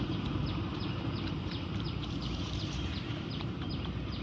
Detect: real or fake fake